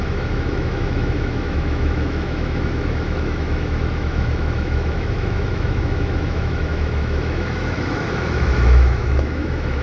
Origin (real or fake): fake